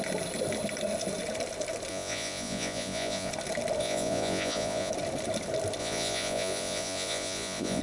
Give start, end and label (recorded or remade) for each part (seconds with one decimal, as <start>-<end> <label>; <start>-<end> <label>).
0.0-1.9 recorded; 1.9-3.3 remade; 3.3-3.8 recorded; 3.8-4.9 remade; 4.9-5.8 recorded; 5.8-7.8 remade